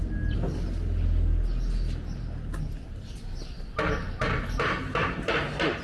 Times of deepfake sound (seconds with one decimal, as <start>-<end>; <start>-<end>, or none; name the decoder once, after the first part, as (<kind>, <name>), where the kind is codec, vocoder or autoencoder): none